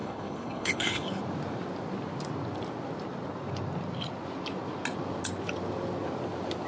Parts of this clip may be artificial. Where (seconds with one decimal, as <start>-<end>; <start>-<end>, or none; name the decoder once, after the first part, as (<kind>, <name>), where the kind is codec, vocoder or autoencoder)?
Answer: 0.0-1.2 (codec, HILCodec)